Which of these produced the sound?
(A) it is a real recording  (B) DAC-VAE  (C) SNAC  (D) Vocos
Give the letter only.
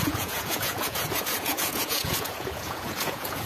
D